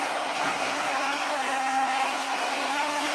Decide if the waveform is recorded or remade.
remade